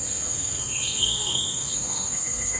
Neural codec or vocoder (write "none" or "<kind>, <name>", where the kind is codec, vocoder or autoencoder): codec, SNAC